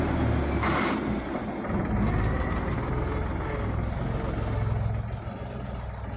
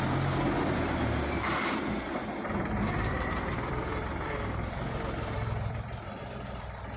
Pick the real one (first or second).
first